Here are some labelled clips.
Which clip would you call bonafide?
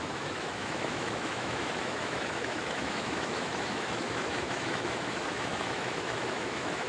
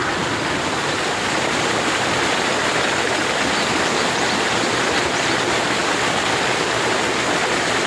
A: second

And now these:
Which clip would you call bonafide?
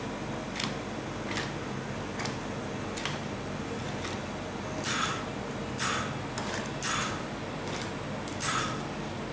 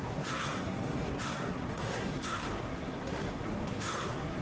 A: first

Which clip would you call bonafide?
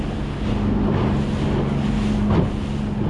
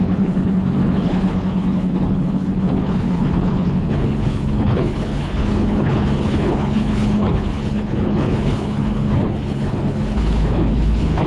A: first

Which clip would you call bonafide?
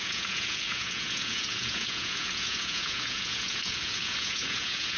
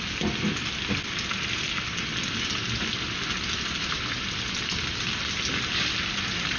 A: second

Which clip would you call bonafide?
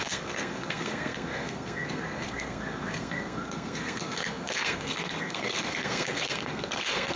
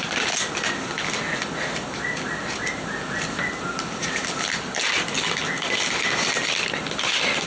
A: second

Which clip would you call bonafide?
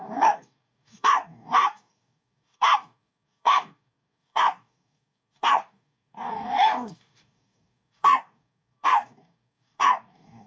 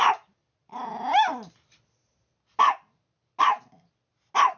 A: second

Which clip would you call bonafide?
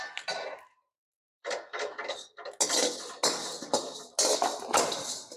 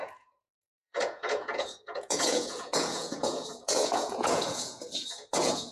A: first